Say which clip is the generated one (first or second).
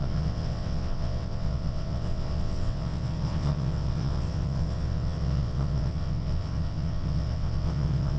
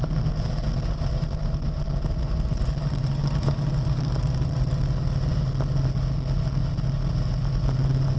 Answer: first